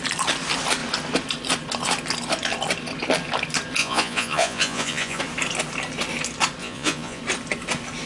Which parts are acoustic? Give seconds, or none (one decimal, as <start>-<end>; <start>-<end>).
0.0-3.8; 5.2-6.6; 7.2-8.1